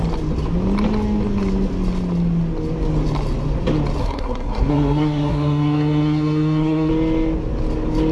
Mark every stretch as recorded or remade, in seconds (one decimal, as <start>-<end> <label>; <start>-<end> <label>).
0.0-4.0 recorded; 4.0-6.9 remade; 6.9-8.1 recorded